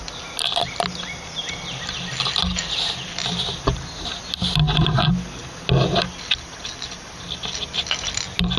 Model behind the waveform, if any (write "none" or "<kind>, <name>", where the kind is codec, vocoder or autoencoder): none